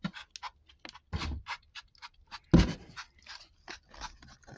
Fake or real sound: real